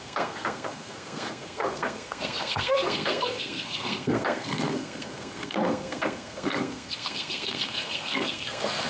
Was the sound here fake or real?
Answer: fake